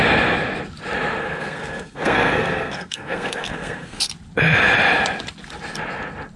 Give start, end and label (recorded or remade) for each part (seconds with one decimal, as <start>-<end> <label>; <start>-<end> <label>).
0.0-1.2 recorded; 1.2-4.1 remade; 4.1-6.4 recorded